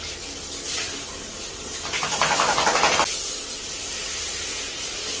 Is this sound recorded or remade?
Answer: recorded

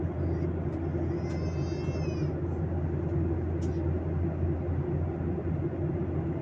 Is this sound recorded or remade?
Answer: recorded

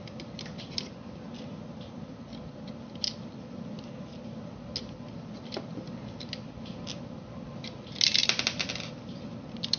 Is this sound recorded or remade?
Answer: recorded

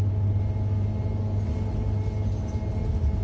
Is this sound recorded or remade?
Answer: recorded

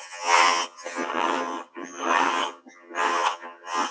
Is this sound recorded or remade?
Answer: remade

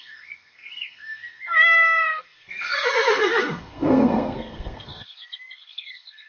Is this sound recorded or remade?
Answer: remade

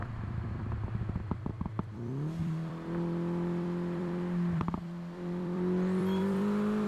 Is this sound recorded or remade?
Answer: remade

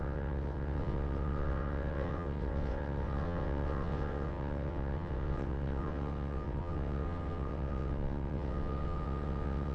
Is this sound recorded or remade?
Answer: remade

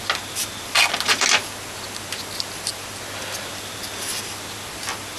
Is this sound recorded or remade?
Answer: recorded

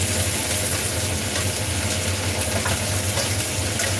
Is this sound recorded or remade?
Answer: recorded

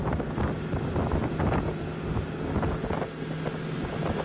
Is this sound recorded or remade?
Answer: recorded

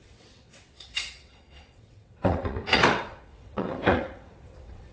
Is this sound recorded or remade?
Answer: remade